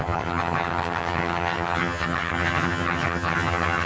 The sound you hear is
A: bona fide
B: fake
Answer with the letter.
B